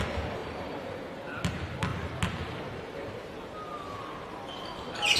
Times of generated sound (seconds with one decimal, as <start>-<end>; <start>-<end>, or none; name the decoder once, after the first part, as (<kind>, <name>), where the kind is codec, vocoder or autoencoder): 0.4-1.0 (vocoder, BigVGAN v2)